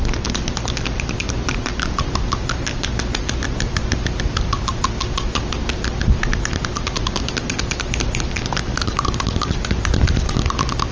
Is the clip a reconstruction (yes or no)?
yes